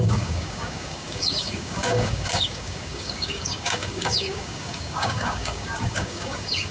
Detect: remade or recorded remade